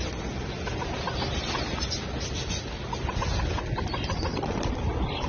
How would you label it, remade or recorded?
recorded